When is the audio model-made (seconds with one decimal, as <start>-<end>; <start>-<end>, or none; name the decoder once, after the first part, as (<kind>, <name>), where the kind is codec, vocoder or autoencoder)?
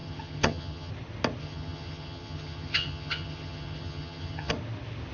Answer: 0.0-0.9 (vocoder, HiFi-GAN); 1.4-4.5